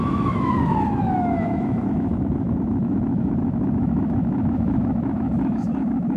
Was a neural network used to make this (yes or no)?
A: yes